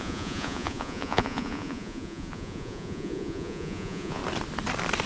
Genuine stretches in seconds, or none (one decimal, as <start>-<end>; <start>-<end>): 4.2-5.1